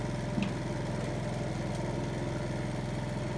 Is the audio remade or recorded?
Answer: recorded